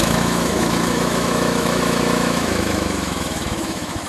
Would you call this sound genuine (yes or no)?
no